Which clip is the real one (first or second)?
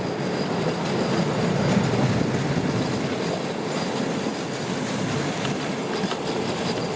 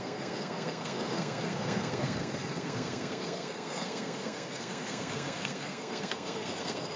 first